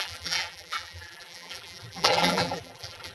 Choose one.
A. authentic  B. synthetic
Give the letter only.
B